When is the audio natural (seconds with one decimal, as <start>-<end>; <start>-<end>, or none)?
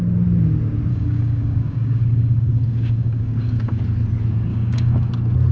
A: 0.0-0.9; 3.8-4.5; 5.1-5.5